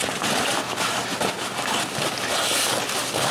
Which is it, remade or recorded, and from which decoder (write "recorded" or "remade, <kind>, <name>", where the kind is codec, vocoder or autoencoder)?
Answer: recorded